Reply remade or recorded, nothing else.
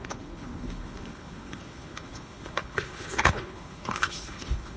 remade